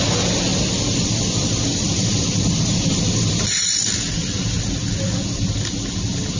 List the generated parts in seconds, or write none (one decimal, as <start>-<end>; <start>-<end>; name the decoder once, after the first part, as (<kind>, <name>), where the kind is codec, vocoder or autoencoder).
none